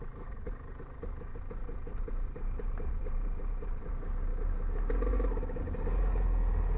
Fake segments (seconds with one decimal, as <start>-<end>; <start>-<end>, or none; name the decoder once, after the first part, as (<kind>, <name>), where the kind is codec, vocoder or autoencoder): 1.3-3.9 (vocoder, BigVGAN v2)